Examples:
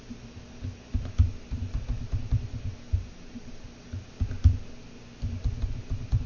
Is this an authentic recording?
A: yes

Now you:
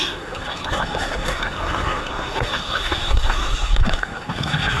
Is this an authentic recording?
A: no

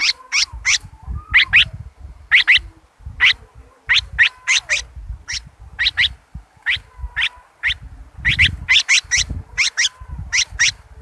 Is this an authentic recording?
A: yes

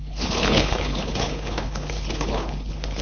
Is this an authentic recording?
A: no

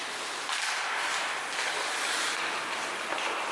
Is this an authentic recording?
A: yes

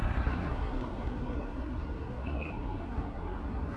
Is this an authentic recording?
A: no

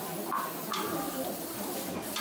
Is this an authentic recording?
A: yes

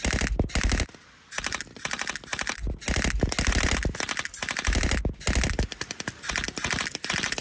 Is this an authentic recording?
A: yes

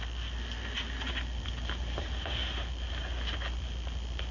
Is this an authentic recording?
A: yes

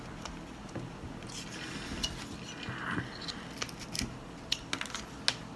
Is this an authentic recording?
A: yes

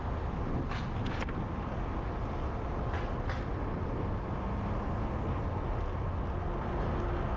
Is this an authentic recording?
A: yes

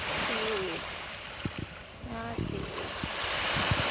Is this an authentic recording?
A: yes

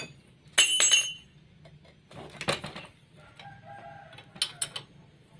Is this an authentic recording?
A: yes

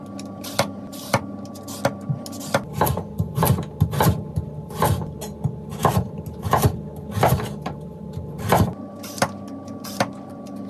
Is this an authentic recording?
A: yes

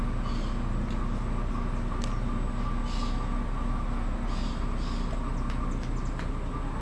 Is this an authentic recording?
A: yes